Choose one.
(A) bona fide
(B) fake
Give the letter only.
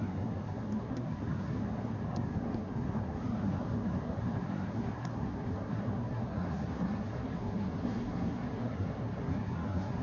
B